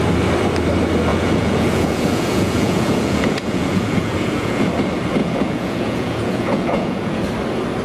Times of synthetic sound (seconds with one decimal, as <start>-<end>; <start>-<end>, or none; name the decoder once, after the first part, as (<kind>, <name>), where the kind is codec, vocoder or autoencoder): 1.1-4.7 (vocoder, Vocos); 5.2-7.2